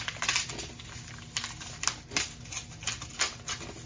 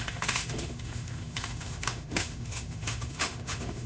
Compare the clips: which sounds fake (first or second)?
second